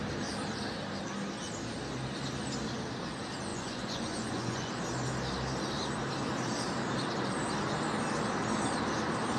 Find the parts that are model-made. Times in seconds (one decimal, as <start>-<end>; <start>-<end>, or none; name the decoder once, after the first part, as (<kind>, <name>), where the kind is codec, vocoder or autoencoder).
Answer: 3.5-4.7 (vocoder, Vocos)